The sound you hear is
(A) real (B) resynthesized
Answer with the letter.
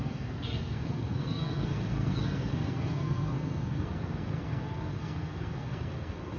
B